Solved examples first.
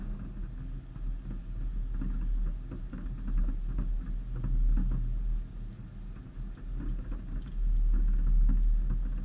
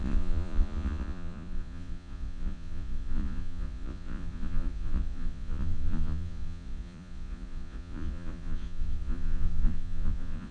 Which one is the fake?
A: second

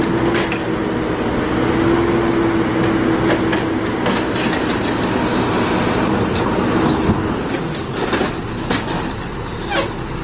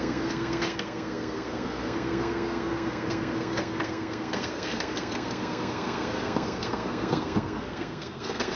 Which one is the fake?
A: second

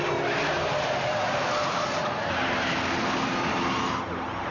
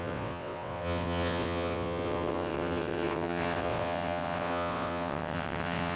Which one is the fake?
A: second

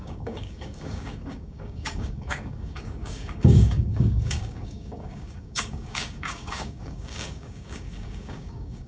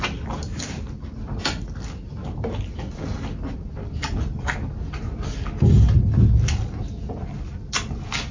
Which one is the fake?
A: first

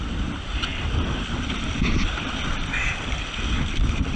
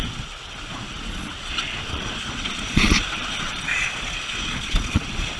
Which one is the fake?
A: second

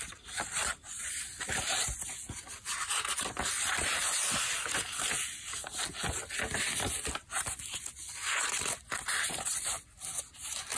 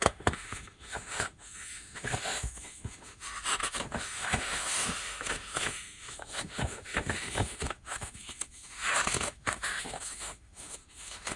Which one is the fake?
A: second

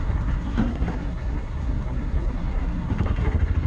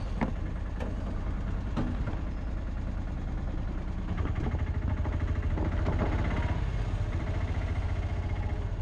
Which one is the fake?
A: first